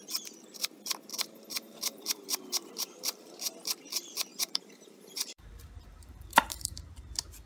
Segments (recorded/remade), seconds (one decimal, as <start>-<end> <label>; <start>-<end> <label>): 0.0-1.1 recorded; 1.1-3.4 remade; 3.4-4.3 recorded; 4.3-7.1 remade; 7.1-7.5 recorded